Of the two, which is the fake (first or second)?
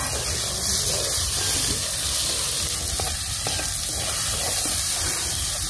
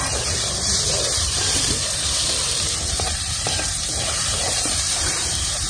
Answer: second